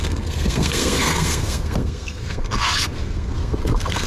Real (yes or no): no